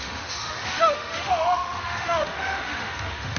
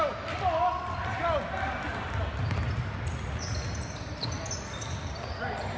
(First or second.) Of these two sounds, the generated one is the first